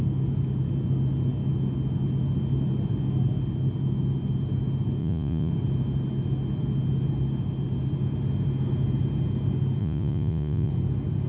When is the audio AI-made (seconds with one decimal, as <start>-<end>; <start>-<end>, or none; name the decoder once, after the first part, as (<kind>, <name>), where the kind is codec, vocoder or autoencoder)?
5.0-5.5 (vocoder, Vocos); 9.8-10.7